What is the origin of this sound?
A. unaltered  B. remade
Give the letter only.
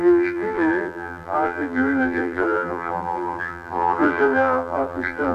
B